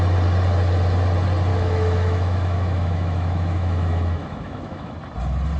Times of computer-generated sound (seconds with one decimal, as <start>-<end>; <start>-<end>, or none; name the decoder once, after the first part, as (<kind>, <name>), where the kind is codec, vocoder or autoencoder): 1.5-4.9 (autoencoder, DAC-VAE)

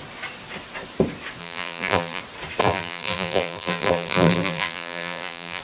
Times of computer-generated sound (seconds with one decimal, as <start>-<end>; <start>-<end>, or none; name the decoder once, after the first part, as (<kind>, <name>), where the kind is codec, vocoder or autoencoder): 1.4-2.2 (vocoder, BigVGAN v2); 2.6-5.6